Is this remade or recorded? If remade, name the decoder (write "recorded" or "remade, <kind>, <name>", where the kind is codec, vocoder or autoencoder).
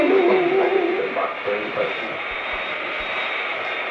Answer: recorded